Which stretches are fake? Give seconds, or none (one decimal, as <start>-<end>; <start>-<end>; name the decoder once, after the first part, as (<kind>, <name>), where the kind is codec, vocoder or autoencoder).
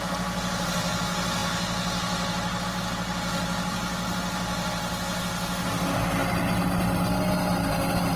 none